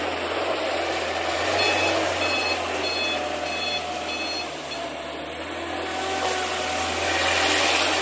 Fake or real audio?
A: real